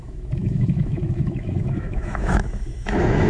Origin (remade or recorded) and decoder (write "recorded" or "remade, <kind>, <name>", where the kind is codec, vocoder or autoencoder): remade, autoencoder, DAC-VAE